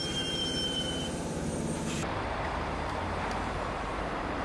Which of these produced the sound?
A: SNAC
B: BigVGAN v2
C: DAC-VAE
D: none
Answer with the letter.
B